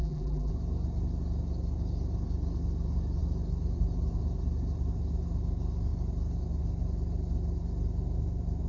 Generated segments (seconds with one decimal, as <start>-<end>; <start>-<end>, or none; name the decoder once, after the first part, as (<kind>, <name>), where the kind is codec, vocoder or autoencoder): 0.0-0.5 (vocoder, BigVGAN v2)